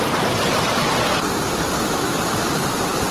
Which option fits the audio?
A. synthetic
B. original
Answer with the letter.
B